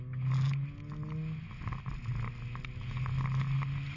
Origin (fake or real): real